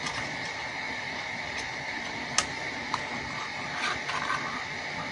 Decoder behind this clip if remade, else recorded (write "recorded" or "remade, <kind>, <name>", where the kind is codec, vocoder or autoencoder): recorded